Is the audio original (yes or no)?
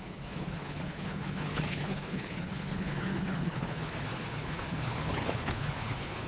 no